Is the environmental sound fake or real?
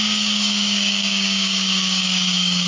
fake